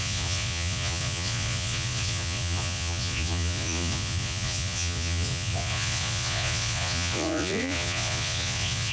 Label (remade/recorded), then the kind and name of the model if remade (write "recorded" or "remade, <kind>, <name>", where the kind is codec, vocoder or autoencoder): remade, vocoder, Vocos